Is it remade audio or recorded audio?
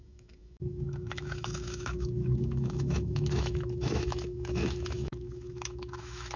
remade